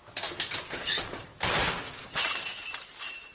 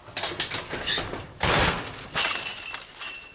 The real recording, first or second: second